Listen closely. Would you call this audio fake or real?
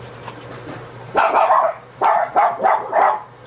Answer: fake